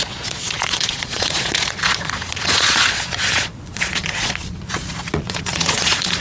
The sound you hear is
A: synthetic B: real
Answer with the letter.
A